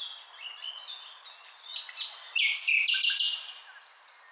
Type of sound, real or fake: real